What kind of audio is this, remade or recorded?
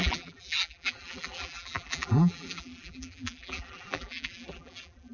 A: remade